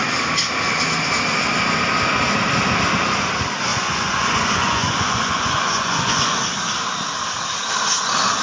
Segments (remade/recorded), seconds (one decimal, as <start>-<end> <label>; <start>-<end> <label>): 0.0-3.7 recorded; 3.7-6.4 remade; 6.4-8.4 recorded